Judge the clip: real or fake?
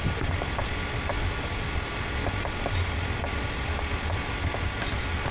real